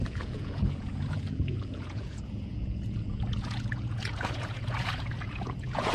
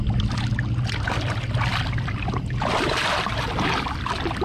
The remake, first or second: first